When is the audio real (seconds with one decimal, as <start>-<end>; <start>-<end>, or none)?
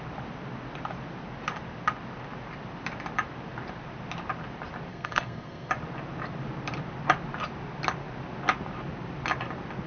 0.0-4.9; 5.7-9.9